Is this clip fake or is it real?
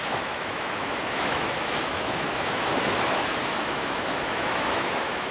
fake